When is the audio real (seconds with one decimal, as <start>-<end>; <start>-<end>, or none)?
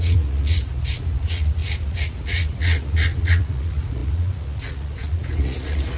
none